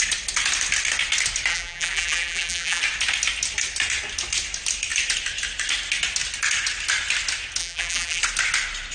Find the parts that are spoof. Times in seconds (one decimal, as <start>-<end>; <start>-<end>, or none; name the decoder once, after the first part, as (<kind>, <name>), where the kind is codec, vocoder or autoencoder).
1.5-2.8 (vocoder, BigVGAN v2); 7.6-8.2